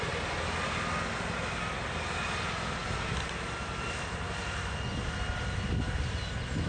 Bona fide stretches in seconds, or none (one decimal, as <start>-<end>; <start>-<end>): 0.0-6.7